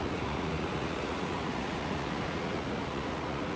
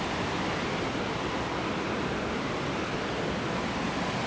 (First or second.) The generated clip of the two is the first